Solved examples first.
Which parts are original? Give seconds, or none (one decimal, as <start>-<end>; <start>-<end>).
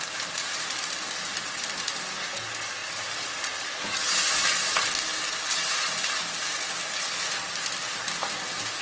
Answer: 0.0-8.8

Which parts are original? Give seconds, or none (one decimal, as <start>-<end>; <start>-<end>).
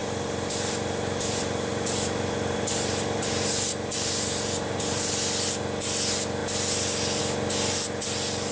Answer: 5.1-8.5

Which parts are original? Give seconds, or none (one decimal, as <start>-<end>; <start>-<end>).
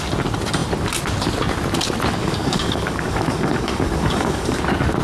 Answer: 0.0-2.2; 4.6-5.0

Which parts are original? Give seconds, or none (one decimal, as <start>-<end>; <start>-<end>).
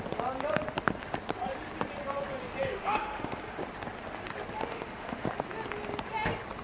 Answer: 0.0-2.7; 3.5-4.7; 5.3-6.6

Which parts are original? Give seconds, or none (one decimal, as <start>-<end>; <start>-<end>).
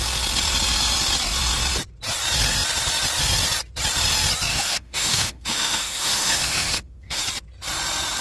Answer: 0.0-4.5; 7.2-8.2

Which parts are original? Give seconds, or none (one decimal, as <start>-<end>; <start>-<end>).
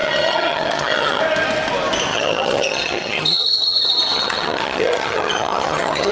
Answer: 1.2-2.1